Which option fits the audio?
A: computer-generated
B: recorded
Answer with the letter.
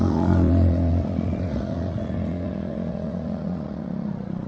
A